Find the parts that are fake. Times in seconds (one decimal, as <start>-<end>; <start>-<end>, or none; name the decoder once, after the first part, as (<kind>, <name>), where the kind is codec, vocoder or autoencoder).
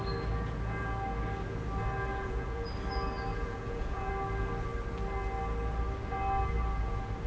2.1-2.7 (vocoder, Vocos); 3.3-4.1